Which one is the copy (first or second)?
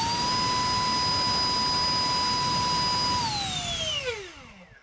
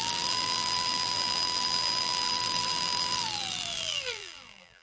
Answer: second